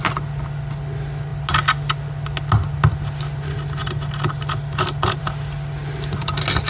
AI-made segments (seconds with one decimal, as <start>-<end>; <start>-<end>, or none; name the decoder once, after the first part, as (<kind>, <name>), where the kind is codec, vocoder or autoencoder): none